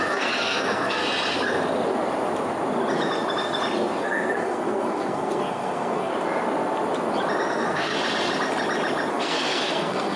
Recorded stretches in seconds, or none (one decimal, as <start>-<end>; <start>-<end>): 1.0-4.0; 6.1-7.5; 7.9-9.1